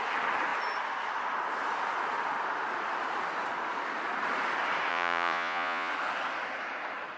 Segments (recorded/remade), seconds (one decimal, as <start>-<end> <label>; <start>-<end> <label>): 0.0-4.9 recorded; 4.9-5.9 remade; 5.9-7.2 recorded